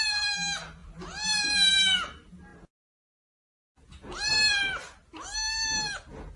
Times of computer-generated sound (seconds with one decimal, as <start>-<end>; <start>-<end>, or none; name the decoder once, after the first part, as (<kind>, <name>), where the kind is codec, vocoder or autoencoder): none